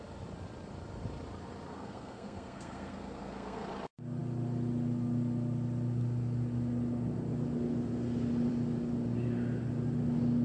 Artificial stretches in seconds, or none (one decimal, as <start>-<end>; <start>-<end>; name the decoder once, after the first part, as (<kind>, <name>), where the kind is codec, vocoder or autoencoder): 1.7-3.7 (codec, SNAC)